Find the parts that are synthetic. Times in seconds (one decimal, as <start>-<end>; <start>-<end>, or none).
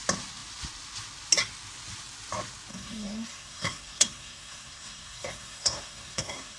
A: 2.7-6.6